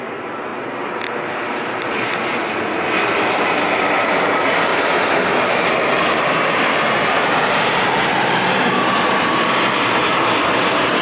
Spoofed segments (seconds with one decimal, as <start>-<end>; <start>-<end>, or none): 0.0-0.5; 3.0-4.7; 5.4-11.0